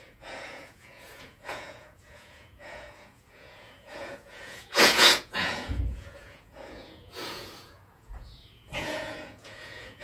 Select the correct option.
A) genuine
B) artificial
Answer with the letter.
B